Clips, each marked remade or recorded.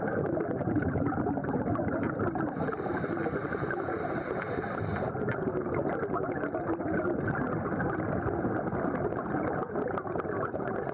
recorded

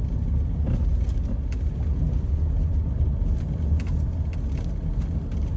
recorded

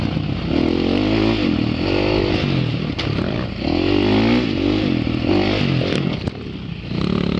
recorded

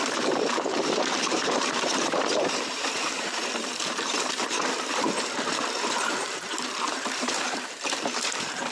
remade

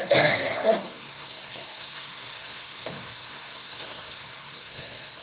remade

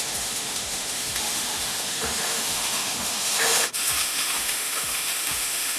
remade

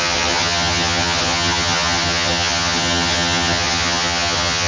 remade